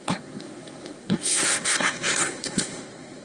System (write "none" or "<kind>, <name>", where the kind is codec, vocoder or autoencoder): codec, SNAC